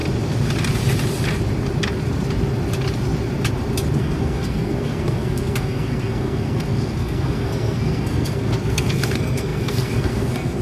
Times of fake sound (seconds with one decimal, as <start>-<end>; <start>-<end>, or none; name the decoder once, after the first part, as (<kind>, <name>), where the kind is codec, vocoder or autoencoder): 4.0-10.6 (codec, SNAC)